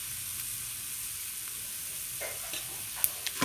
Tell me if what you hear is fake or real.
real